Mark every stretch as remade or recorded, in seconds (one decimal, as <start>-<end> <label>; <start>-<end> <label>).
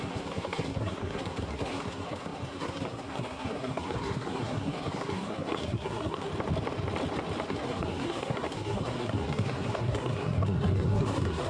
0.0-6.3 remade; 6.3-7.5 recorded; 7.5-11.5 remade